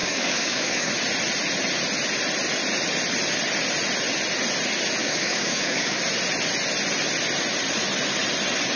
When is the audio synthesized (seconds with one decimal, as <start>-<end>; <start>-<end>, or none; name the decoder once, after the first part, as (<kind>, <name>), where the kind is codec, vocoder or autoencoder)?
0.0-0.9 (codec, DAC); 5.0-6.0